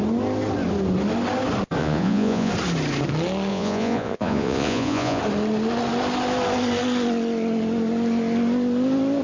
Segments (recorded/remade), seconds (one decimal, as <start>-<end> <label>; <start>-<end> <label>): 0.0-1.8 recorded; 1.8-2.5 remade; 2.5-3.5 recorded; 3.5-5.2 remade; 5.2-9.2 recorded